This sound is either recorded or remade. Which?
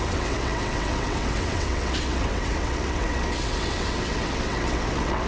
remade